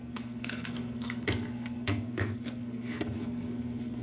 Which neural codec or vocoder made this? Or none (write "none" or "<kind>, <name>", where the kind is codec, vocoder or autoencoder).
codec, SNAC